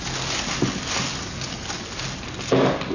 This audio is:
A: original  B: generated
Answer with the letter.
A